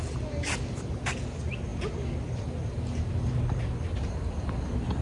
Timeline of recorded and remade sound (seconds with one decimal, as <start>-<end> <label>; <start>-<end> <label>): 0.0-5.0 recorded

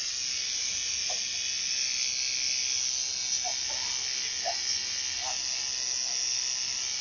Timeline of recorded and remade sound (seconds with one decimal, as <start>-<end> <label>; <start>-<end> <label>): 0.0-7.0 recorded

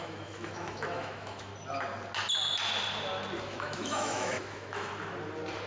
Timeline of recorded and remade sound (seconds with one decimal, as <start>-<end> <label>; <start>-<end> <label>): 0.0-1.5 remade; 1.5-3.4 recorded; 3.4-4.9 remade; 4.9-5.7 recorded

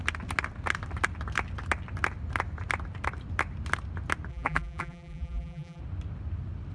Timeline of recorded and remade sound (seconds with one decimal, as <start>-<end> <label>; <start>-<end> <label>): 0.0-4.3 recorded; 4.3-5.8 remade; 5.8-6.7 recorded

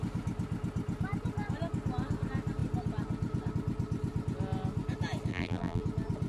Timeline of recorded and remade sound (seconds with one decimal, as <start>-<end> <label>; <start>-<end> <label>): 0.0-5.3 recorded; 5.3-5.8 remade; 5.8-6.3 recorded

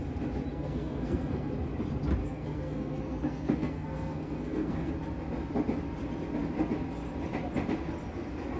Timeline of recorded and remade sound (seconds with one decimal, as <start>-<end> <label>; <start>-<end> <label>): 0.0-0.5 recorded; 0.5-1.5 remade; 1.5-2.2 recorded; 2.2-4.9 remade; 4.9-8.6 recorded

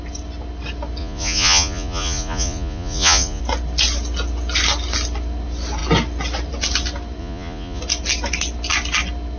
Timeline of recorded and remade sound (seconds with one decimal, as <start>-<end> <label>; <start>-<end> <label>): 0.0-1.0 recorded; 1.0-3.4 remade; 3.4-7.2 recorded; 7.2-7.8 remade; 7.8-9.4 recorded

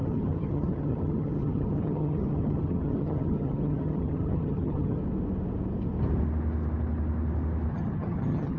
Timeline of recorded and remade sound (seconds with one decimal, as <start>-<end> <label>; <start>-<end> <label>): 0.0-5.0 remade; 5.0-7.7 recorded; 7.7-8.6 remade